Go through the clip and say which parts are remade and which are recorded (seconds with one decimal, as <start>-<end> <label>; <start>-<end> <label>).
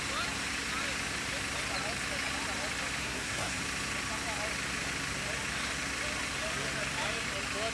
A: 0.0-3.0 recorded; 3.0-3.6 remade; 3.6-7.7 recorded